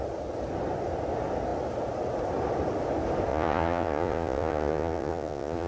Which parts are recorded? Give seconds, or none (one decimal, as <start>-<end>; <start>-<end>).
0.0-3.3